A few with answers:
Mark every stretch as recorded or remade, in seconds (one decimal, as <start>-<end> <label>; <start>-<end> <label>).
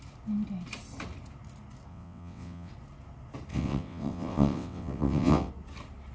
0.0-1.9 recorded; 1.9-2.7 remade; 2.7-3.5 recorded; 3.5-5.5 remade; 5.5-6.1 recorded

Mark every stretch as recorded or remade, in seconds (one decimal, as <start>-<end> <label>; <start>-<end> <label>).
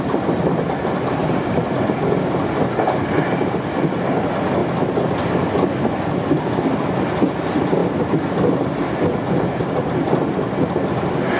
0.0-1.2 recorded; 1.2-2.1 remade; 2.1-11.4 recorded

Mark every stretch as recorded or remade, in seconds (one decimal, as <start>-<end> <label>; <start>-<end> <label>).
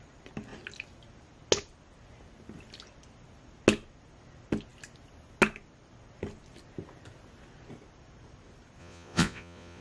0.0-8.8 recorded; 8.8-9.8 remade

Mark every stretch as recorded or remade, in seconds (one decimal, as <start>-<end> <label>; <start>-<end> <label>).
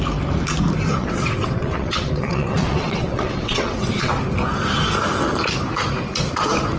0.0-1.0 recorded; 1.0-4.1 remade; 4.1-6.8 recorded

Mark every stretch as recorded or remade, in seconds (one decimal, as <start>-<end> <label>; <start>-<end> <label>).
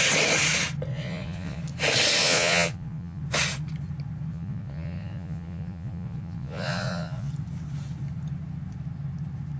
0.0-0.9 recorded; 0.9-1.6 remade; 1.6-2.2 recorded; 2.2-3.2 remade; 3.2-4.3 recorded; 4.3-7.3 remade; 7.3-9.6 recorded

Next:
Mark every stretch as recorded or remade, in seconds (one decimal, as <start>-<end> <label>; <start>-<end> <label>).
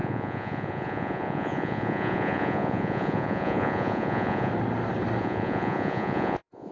0.0-4.5 remade; 4.5-5.2 recorded; 5.2-6.7 remade